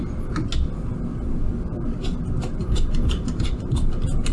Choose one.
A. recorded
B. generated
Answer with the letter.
A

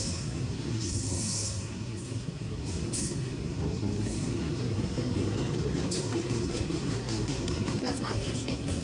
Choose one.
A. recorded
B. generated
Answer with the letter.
B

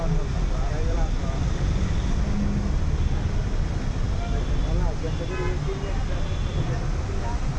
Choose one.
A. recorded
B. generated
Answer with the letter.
A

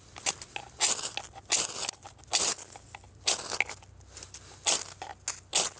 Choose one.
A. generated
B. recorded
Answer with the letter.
B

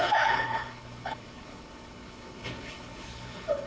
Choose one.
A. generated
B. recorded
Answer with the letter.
A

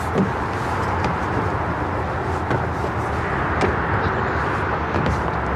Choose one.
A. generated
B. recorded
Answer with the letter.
B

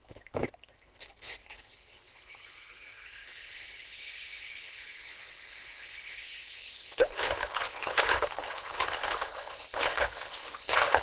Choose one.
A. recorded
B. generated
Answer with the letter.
B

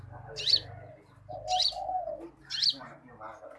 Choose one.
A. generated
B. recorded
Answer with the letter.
B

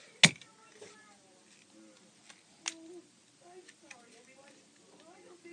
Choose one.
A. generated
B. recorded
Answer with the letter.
B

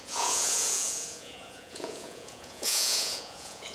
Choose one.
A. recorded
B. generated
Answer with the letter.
B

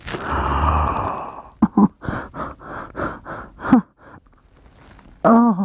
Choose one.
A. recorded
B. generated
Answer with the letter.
A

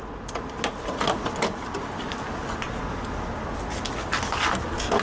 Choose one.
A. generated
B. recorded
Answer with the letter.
B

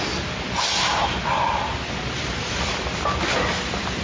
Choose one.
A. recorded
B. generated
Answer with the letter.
A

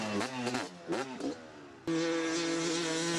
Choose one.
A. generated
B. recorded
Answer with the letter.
B